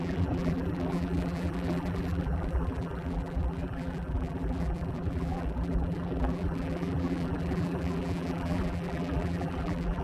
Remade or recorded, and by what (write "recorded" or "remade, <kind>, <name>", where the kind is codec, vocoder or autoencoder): remade, vocoder, BigVGAN v2